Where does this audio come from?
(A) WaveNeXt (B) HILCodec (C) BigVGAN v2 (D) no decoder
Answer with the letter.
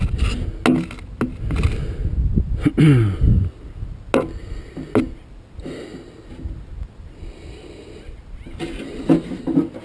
D